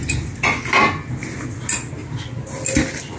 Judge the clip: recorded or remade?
recorded